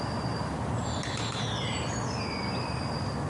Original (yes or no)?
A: yes